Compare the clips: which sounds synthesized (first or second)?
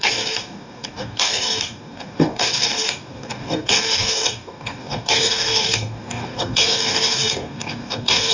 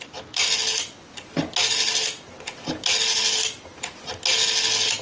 first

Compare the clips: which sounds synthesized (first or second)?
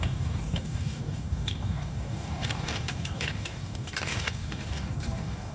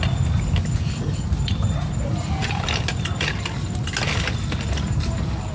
first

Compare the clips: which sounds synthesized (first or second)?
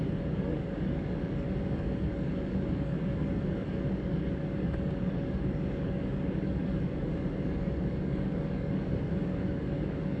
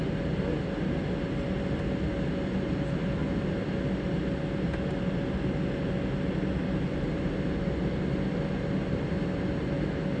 first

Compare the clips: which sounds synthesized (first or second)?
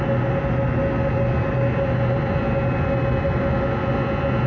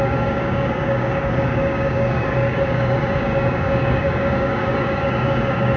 second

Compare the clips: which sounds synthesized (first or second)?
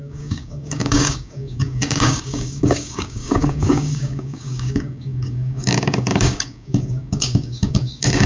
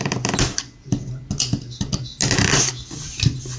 first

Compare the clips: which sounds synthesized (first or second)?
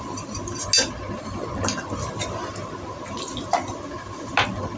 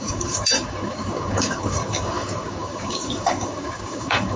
second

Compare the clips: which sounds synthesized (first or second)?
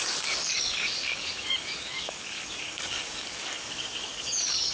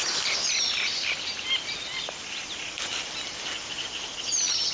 first